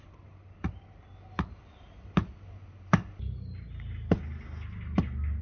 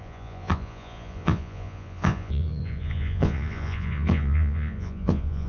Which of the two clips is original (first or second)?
first